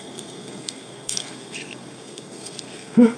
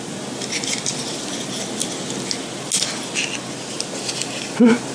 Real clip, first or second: second